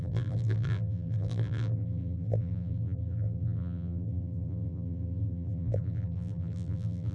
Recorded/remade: remade